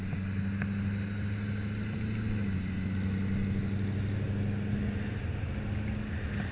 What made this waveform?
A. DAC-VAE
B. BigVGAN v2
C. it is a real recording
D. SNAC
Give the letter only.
C